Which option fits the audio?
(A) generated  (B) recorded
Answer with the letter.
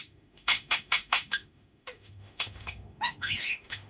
A